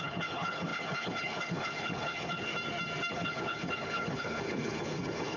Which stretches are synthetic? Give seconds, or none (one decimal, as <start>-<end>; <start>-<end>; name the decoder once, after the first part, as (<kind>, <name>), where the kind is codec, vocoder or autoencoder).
0.0-2.5 (codec, HILCodec); 3.1-5.4